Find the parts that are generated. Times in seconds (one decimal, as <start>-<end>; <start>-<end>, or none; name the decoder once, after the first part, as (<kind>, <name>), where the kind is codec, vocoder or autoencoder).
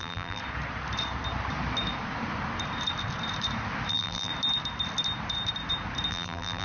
0.0-0.4 (vocoder, BigVGAN v2); 3.9-4.3; 6.1-6.6